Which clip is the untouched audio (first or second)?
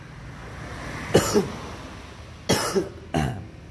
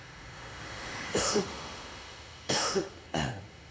first